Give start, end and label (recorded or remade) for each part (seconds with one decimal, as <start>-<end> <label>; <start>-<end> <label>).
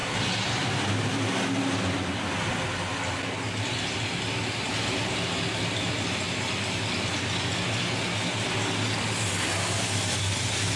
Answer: 0.0-1.1 remade; 1.1-10.8 recorded